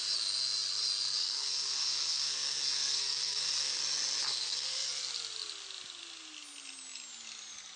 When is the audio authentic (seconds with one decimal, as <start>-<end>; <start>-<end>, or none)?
0.0-1.2; 3.8-4.2; 5.0-7.8